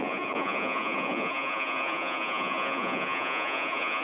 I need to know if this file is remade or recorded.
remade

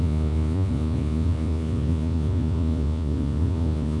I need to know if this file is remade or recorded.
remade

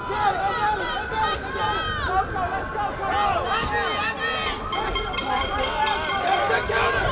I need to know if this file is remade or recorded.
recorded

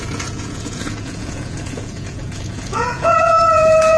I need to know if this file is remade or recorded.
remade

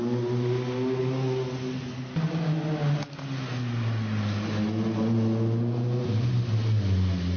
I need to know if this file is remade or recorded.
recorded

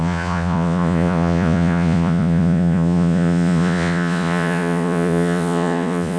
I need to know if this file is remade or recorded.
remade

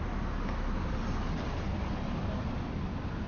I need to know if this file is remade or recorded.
recorded